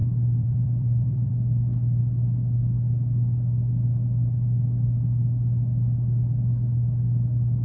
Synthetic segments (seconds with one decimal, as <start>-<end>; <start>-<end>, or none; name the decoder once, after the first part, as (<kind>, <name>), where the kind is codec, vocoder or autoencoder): 0.0-1.3 (vocoder, BigVGAN v2)